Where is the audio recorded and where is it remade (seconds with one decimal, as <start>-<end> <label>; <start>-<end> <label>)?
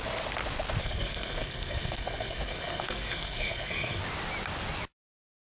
0.0-0.8 recorded; 0.8-4.0 remade; 4.0-5.4 recorded